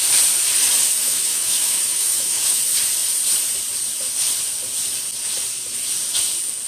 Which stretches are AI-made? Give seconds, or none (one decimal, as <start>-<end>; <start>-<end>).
1.0-2.6